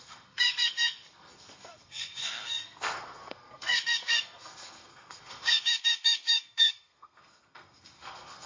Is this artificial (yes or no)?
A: yes